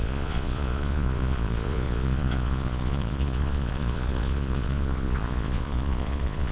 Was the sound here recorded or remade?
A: remade